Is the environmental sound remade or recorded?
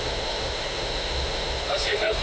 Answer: remade